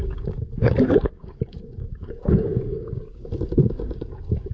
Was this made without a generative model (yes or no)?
no